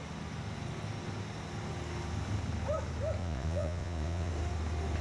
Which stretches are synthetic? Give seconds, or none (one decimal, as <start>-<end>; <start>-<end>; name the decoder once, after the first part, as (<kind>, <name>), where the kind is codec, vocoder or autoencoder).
3.2-4.3 (vocoder, Vocos)